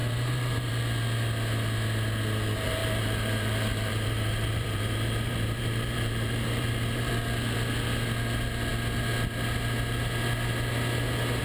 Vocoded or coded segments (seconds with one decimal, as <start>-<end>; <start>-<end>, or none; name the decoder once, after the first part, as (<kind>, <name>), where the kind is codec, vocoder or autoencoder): 0.0-0.7 (vocoder, BigVGAN v2); 2.8-7.1